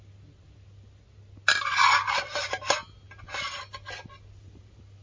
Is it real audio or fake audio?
real